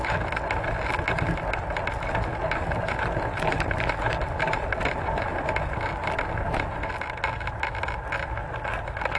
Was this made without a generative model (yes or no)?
yes